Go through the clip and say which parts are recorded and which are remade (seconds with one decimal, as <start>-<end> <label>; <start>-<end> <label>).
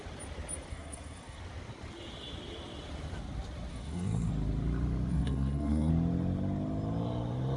0.0-0.7 recorded; 0.7-1.4 remade; 1.4-3.7 recorded; 3.7-4.3 remade; 4.3-5.1 recorded; 5.1-5.9 remade; 5.9-7.6 recorded